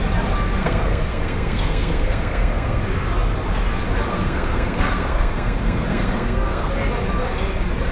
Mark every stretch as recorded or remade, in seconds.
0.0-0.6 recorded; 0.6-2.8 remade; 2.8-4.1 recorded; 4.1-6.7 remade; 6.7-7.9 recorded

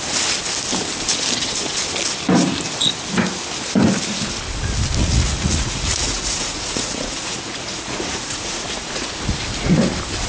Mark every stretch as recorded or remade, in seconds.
0.0-5.0 recorded; 5.0-9.1 remade; 9.1-10.3 recorded

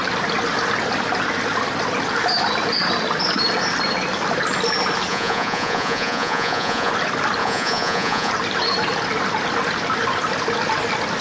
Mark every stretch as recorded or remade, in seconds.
0.0-5.1 recorded; 5.1-6.9 remade; 6.9-7.4 recorded; 7.4-8.3 remade; 8.3-11.2 recorded

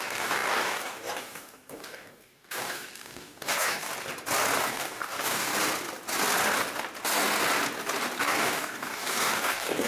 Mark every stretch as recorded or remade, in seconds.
0.0-3.9 remade; 3.9-4.6 recorded; 4.6-5.5 remade; 5.5-8.2 recorded; 8.2-9.9 remade

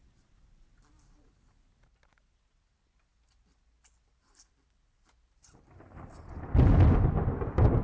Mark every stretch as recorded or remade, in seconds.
0.0-7.8 recorded

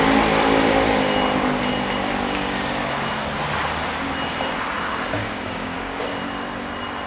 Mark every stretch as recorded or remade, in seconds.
0.0-5.2 recorded; 5.2-6.0 remade; 6.0-7.1 recorded

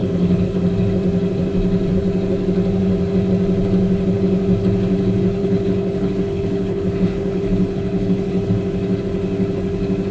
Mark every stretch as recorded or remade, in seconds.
0.0-0.6 remade; 0.6-5.4 recorded; 5.4-8.5 remade; 8.5-10.1 recorded